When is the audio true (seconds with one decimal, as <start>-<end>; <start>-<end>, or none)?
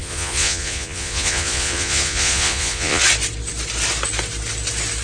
3.0-5.0